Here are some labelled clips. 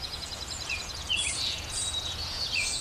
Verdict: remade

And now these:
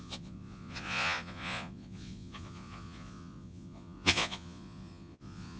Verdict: remade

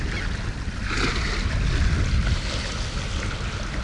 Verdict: recorded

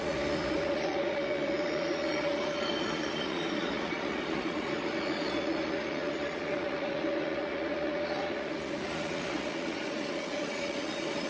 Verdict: remade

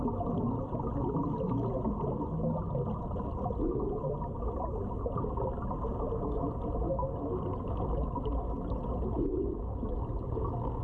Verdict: recorded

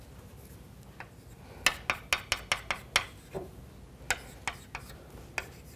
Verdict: recorded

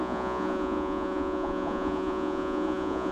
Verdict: remade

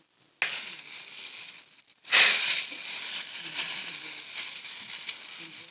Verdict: recorded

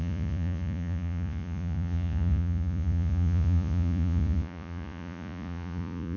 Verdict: remade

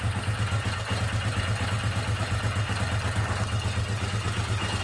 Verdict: recorded